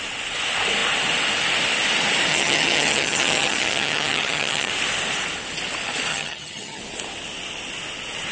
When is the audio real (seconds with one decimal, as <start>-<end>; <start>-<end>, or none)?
0.0-2.3; 4.7-6.1; 6.8-8.3